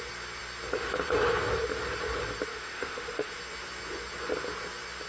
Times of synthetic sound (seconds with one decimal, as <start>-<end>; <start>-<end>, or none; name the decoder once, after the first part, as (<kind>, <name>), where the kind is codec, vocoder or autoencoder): 2.5-3.3 (autoencoder, DAC-VAE)